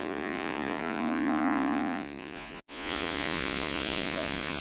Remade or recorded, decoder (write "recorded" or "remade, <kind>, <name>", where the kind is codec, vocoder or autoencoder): remade, vocoder, Vocos